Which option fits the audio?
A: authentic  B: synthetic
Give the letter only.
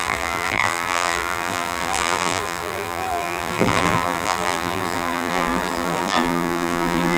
B